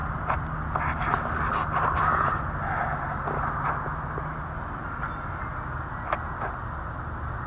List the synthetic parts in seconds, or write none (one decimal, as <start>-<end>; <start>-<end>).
none